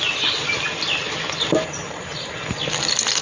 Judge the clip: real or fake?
real